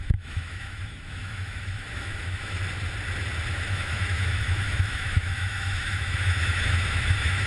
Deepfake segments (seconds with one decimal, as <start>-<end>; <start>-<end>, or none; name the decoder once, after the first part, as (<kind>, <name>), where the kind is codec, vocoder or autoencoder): 0.0-2.6 (autoencoder, DAC-VAE); 3.5-7.5